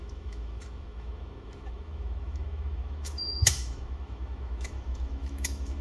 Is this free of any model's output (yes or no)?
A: no